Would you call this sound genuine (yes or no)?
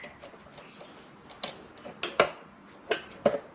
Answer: yes